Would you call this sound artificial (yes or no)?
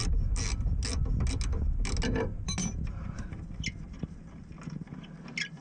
no